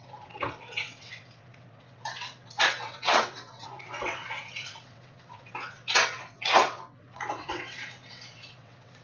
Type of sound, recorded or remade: remade